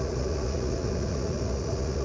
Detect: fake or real fake